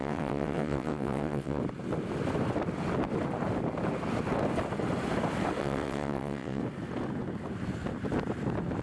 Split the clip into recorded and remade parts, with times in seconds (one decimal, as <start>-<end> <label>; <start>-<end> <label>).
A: 0.0-1.6 remade; 1.6-5.6 recorded; 5.6-6.6 remade; 6.6-8.8 recorded